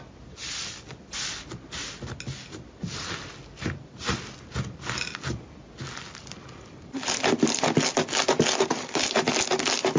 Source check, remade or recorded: recorded